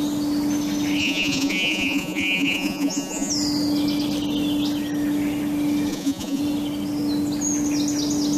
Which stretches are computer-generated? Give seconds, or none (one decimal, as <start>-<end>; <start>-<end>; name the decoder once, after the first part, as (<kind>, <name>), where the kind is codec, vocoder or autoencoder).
1.0-3.3 (vocoder, Vocos); 5.9-6.4